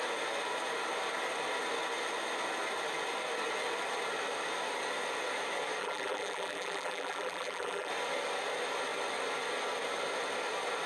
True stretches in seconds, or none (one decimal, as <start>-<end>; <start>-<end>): 0.0-5.8; 7.9-10.9